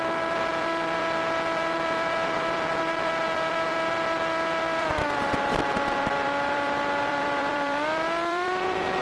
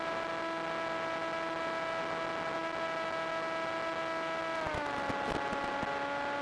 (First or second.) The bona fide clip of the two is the second